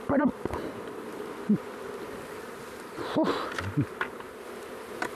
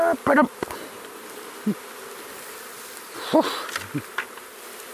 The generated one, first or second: first